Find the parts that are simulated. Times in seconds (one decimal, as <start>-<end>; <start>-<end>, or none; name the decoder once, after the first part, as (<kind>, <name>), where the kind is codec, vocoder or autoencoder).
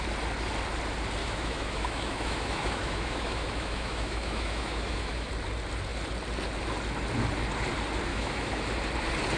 1.2-5.3 (autoencoder, DAC-VAE); 8.1-8.6